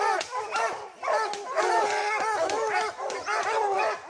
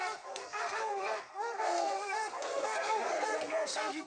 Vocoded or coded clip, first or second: second